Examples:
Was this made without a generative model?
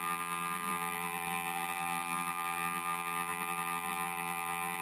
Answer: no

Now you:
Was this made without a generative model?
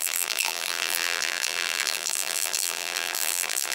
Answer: no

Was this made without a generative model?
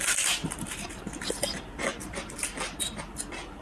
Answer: no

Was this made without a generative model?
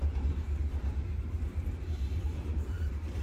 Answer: no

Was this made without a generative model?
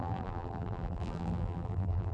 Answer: no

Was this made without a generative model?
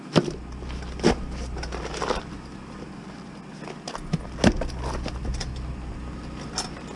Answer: yes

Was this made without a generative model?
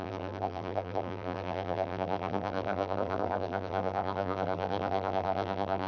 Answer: no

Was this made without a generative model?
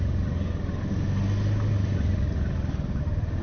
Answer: yes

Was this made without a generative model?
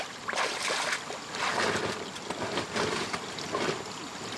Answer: yes